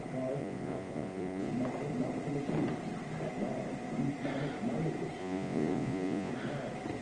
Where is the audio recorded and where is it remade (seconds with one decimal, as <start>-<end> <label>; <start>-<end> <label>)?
0.0-0.4 recorded; 0.4-1.5 remade; 1.5-5.2 recorded; 5.2-6.3 remade; 6.3-7.0 recorded